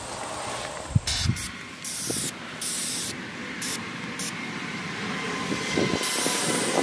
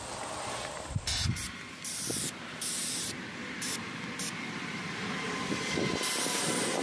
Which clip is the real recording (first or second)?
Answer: first